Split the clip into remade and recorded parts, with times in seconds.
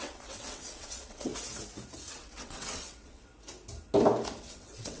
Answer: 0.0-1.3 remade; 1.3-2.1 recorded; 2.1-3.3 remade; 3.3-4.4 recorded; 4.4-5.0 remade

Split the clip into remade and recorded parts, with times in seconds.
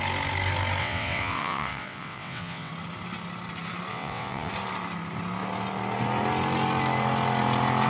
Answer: 0.0-0.8 recorded; 0.8-2.7 remade; 2.7-3.9 recorded; 3.9-4.5 remade; 4.5-7.9 recorded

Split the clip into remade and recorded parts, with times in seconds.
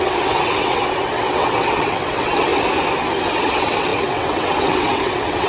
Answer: 0.0-2.5 remade; 2.5-3.3 recorded; 3.3-5.5 remade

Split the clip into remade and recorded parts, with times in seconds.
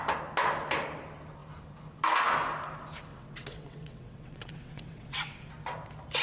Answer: 0.0-3.1 recorded; 3.1-5.5 remade; 5.5-6.2 recorded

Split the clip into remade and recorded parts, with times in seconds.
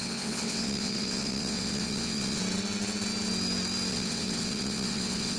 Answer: 0.0-2.4 remade; 2.4-3.9 recorded; 3.9-5.4 remade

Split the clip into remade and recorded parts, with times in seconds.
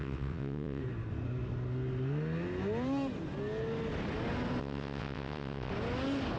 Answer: 0.0-0.8 remade; 0.8-4.6 recorded; 4.6-5.7 remade; 5.7-6.4 recorded